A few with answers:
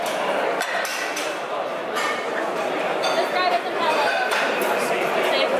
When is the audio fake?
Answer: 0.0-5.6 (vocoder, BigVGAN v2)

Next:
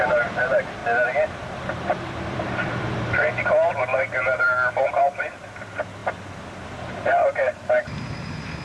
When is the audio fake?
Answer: 0.0-0.8 (vocoder, BigVGAN v2); 1.4-3.9; 4.7-6.0; 6.8-8.6